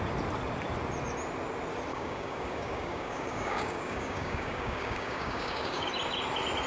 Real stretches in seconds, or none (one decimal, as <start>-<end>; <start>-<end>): 0.0-1.9; 5.9-6.7